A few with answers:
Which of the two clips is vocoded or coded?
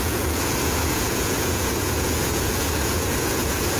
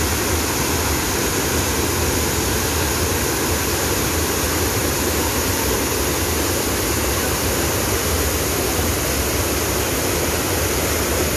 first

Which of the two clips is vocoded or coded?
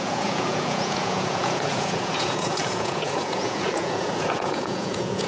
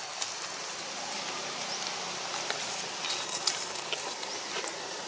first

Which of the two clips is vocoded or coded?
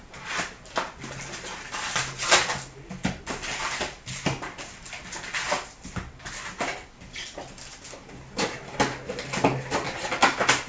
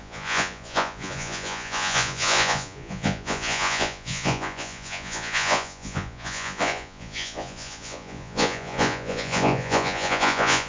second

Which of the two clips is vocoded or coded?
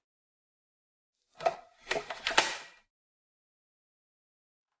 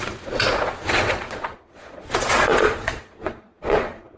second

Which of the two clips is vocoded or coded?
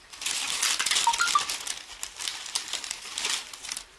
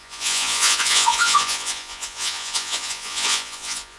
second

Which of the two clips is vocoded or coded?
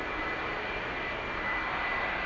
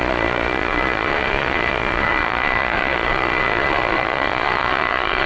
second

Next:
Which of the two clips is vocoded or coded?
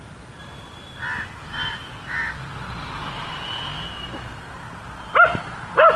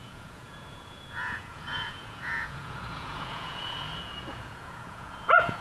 second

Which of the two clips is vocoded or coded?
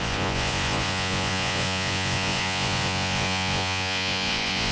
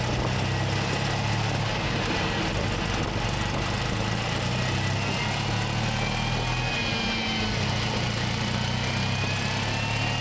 first